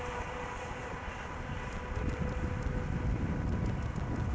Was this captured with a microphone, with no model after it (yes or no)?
yes